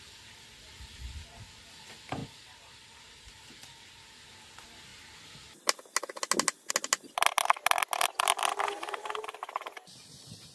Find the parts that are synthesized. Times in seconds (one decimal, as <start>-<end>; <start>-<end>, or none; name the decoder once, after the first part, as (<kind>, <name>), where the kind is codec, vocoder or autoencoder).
none